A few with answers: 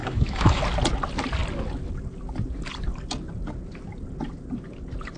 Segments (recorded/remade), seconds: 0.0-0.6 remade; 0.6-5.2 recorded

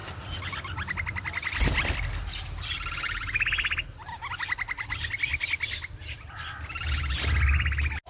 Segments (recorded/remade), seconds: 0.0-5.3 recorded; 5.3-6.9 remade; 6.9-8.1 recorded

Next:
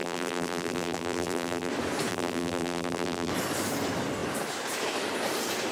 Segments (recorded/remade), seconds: 0.0-1.7 remade; 1.7-2.1 recorded; 2.1-3.3 remade; 3.3-5.7 recorded

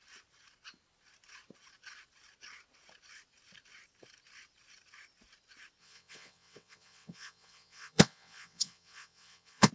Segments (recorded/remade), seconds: 0.0-5.8 recorded; 5.8-9.7 remade